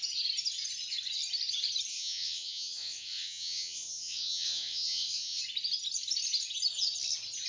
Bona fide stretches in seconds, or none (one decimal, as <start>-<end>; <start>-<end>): 0.0-1.9; 5.4-7.5